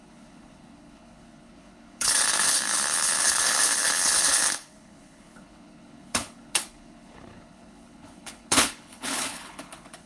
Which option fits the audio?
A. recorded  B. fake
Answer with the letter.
B